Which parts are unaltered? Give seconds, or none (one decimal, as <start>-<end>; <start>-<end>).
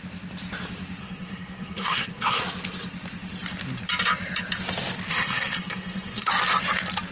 0.0-1.0; 2.4-5.1; 6.3-7.1